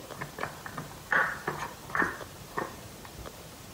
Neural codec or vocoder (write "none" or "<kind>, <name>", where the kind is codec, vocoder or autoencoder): vocoder, BigVGAN v2